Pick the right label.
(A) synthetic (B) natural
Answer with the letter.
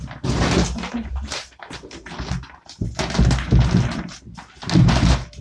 B